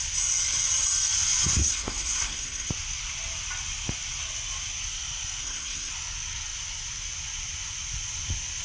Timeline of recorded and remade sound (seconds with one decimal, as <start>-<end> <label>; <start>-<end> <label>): 0.0-1.6 recorded; 1.6-2.7 remade; 2.7-5.4 recorded; 5.4-5.9 remade; 5.9-8.6 recorded